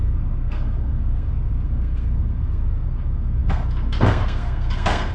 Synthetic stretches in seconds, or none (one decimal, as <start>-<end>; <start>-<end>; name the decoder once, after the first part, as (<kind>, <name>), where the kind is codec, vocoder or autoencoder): 0.0-5.1 (codec, SNAC)